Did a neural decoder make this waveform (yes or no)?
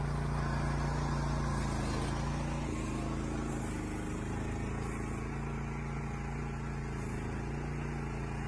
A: no